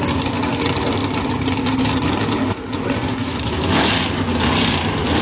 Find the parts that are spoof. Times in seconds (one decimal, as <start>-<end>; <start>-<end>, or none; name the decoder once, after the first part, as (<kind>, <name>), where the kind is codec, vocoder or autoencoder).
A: 3.2-3.9 (autoencoder, DAC-VAE)

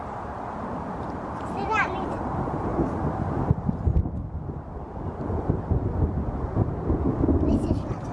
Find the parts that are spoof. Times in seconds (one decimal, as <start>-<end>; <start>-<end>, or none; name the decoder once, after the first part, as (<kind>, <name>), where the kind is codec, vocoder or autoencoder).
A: none

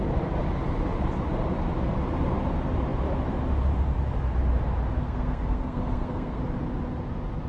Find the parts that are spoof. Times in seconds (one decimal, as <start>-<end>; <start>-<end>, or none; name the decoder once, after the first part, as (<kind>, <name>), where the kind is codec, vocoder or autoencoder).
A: 5.0-6.4 (codec, SNAC)

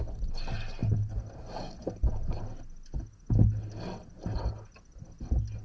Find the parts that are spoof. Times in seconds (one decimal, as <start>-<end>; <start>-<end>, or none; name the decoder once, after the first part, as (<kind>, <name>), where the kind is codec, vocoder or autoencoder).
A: none

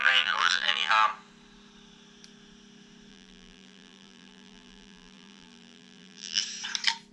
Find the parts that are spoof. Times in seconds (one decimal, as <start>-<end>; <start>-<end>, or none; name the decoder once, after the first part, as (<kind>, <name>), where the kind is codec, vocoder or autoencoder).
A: 0.0-0.9 (vocoder, BigVGAN v2); 3.1-6.4